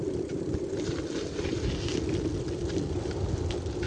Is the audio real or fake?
real